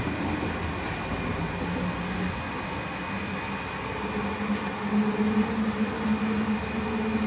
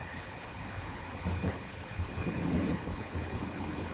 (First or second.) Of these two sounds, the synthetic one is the second